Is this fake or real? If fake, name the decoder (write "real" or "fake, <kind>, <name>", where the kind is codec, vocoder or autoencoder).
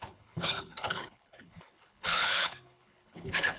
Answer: fake, codec, HILCodec